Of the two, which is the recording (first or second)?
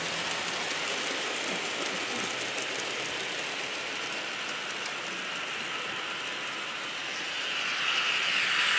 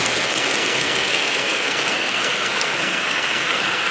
first